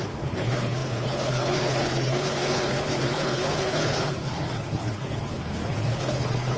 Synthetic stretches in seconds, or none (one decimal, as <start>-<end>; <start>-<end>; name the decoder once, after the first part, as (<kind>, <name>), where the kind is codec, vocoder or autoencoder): 0.0-6.6 (codec, HILCodec)